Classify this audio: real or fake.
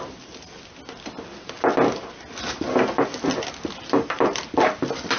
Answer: real